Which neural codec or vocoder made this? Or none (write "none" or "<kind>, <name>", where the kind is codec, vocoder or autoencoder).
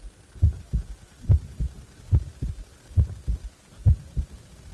none